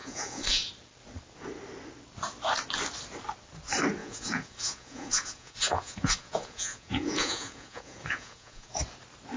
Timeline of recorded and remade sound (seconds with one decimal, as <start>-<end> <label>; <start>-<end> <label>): 0.0-0.7 remade; 0.7-4.0 recorded; 4.0-8.8 remade; 8.8-9.4 recorded